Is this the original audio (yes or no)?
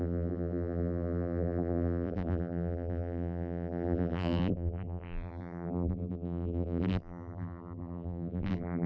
no